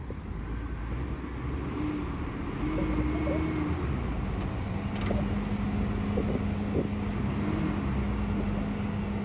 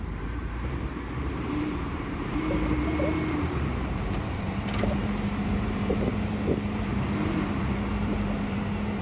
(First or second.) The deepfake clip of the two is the second